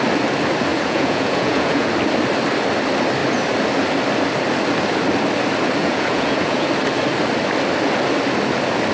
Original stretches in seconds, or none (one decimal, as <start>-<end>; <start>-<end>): 0.0-0.7; 1.9-5.8; 6.7-8.9